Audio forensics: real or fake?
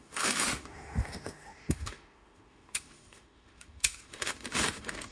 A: fake